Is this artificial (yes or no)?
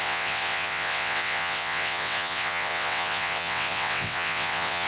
yes